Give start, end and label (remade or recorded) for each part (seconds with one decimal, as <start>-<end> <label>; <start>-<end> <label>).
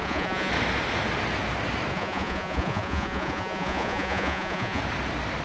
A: 0.0-0.5 remade; 0.5-1.9 recorded; 1.9-4.8 remade; 4.8-5.4 recorded